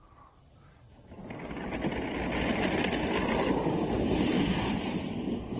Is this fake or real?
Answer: real